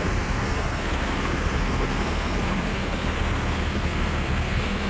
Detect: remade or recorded remade